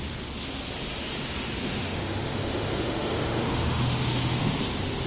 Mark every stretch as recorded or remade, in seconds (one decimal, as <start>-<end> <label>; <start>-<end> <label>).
0.0-1.6 recorded; 1.6-4.4 remade; 4.4-5.1 recorded